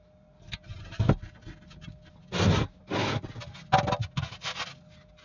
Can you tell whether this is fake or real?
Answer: real